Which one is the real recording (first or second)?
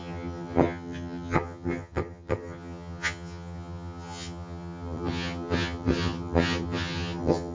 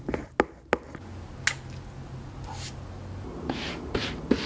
second